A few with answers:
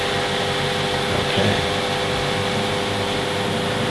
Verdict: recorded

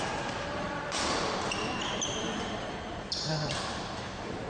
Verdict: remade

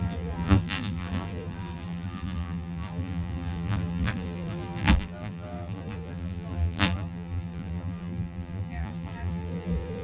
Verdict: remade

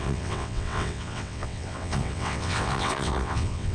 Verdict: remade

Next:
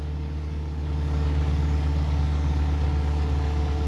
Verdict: remade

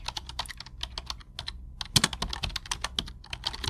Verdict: recorded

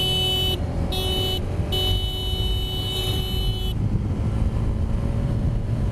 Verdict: recorded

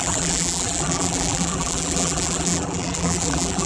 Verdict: remade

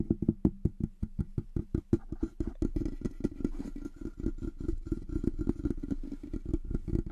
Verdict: recorded